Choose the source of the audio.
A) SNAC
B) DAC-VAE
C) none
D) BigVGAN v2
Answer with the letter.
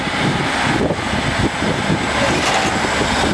C